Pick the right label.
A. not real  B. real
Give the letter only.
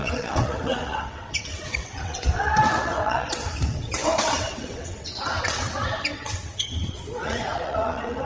A